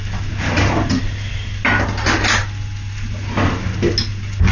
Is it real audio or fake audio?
real